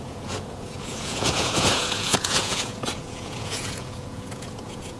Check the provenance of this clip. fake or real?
fake